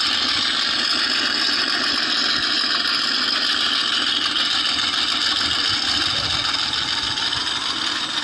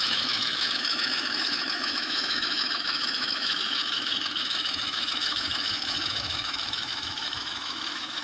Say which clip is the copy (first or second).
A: second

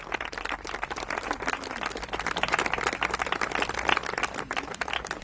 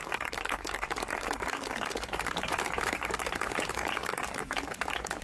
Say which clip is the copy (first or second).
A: second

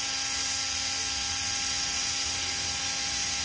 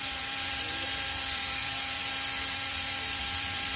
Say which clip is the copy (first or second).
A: second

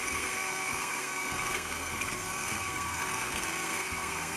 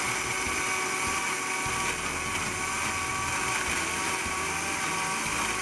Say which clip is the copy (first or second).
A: first